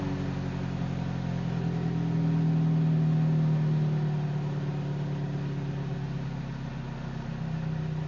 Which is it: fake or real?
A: real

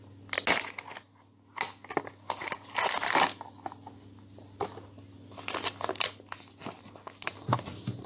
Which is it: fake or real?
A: real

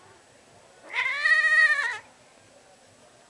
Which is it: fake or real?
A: real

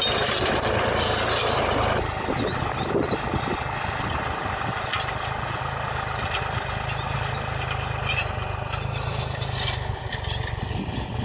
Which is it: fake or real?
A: real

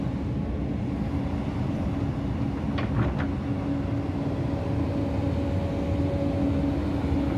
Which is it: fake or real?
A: real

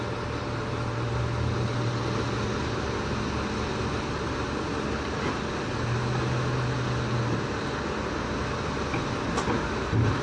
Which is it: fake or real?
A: real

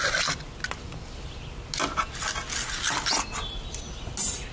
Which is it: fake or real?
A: real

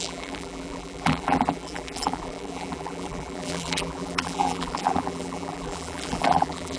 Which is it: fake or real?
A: fake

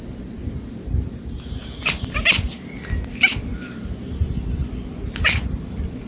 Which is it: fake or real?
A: real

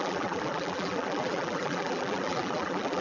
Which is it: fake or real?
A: fake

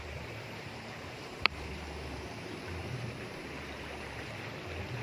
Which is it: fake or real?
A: fake